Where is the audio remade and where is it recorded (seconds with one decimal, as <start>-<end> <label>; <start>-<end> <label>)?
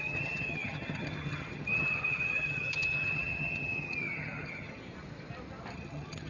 0.0-4.8 remade; 4.8-5.7 recorded; 5.7-6.3 remade